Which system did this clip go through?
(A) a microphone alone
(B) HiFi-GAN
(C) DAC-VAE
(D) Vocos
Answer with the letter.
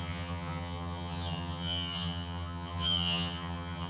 B